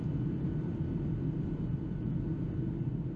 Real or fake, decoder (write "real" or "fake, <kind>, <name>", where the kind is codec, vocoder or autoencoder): real